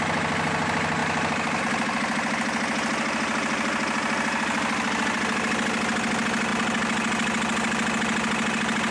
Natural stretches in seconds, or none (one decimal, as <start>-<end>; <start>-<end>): 0.0-8.9